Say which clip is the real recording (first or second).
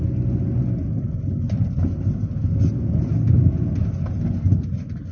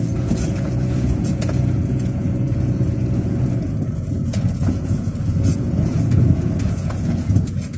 first